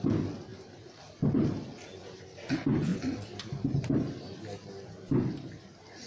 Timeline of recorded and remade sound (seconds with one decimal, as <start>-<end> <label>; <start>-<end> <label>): 0.0-6.1 recorded